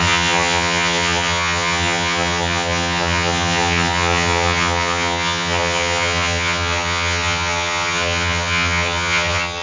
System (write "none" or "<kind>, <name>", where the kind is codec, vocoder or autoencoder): vocoder, HiFi-GAN